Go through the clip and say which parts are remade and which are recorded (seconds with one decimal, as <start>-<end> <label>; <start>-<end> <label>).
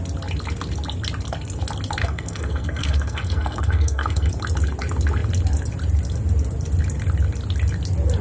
0.0-2.0 recorded; 2.0-4.3 remade; 4.3-8.2 recorded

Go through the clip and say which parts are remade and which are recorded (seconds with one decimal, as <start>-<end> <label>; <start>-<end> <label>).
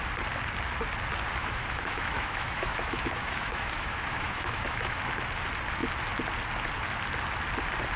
0.0-1.4 recorded; 1.4-5.0 remade; 5.0-8.0 recorded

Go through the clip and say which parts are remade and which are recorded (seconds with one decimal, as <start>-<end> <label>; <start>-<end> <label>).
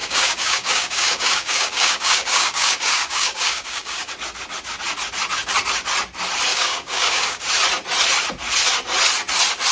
0.0-4.1 remade; 4.1-6.5 recorded; 6.5-7.4 remade; 7.4-9.7 recorded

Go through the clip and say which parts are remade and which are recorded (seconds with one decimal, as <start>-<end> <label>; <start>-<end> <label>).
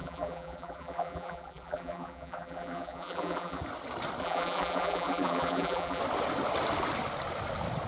0.0-3.6 remade; 3.6-4.2 recorded; 4.2-6.0 remade; 6.0-7.9 recorded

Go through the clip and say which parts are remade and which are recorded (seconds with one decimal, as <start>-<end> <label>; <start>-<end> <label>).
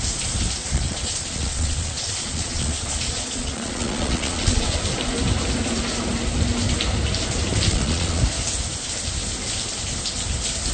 0.0-0.6 recorded; 0.6-4.8 remade; 4.8-7.7 recorded; 7.7-8.2 remade; 8.2-10.7 recorded